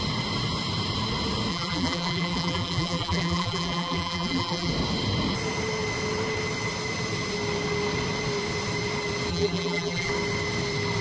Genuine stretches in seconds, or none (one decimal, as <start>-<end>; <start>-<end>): 0.0-1.5; 4.7-9.3; 10.1-11.0